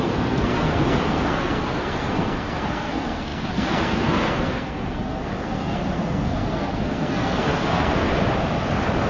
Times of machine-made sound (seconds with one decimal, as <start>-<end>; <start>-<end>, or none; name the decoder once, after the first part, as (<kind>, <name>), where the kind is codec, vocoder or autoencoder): 0.0-8.1 (codec, SNAC)